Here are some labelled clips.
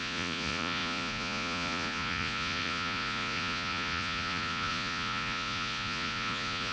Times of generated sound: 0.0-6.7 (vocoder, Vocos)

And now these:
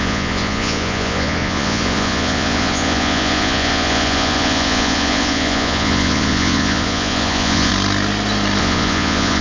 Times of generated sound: 0.0-7.7 (vocoder, Vocos); 8.6-9.4

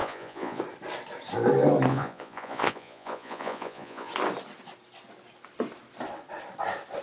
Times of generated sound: 0.0-0.6 (vocoder, Vocos); 1.9-4.1

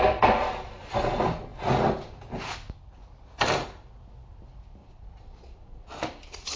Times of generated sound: 4.8-6.6 (vocoder, Vocos)

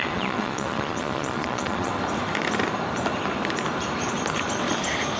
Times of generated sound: 0.0-1.9 (vocoder, Vocos)